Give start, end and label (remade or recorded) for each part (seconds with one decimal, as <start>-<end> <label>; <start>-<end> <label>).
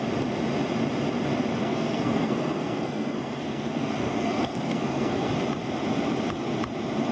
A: 0.0-1.6 recorded; 1.6-5.3 remade; 5.3-7.1 recorded